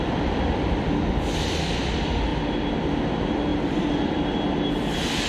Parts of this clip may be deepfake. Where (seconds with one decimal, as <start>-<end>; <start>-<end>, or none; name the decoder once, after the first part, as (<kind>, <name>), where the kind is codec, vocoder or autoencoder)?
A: 0.0-2.3 (vocoder, BigVGAN v2); 2.8-5.3